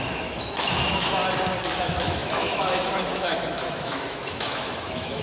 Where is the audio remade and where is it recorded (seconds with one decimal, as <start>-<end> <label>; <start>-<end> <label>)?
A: 0.0-1.2 remade; 1.2-1.8 recorded; 1.8-5.2 remade